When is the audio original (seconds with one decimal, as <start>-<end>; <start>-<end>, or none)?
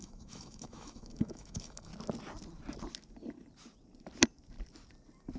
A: 1.9-5.4